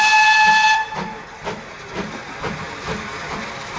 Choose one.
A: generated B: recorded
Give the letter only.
B